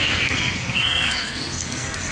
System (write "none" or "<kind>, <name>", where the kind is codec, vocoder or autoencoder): codec, SNAC